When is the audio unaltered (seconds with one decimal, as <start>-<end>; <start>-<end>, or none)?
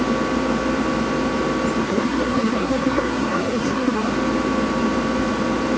0.0-1.8; 4.1-5.8